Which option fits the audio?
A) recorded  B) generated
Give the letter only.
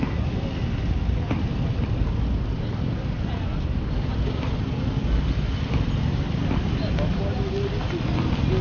A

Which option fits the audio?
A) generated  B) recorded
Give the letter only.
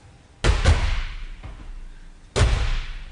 B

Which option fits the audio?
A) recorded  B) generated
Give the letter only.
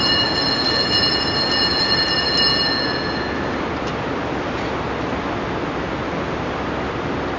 A